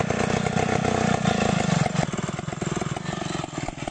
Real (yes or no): yes